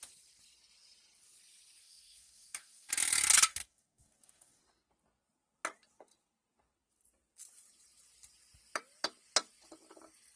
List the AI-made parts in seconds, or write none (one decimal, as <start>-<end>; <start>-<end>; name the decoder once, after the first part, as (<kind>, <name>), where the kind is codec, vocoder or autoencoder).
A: 1.8-2.9 (codec, DAC); 3.5-4.6